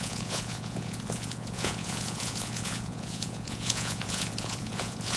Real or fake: fake